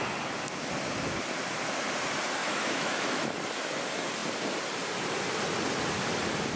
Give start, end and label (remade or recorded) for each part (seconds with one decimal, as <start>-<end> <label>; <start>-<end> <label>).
0.0-2.4 recorded; 2.4-3.3 remade; 3.3-6.6 recorded